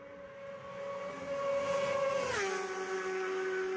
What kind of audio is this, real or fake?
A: real